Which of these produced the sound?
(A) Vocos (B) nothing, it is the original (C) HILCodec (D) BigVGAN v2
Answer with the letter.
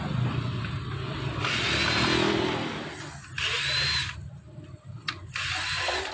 B